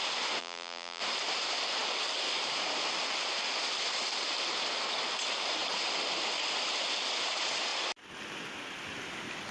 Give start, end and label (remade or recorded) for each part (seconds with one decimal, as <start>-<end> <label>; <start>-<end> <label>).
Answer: 0.0-0.4 recorded; 0.4-1.0 remade; 1.0-9.5 recorded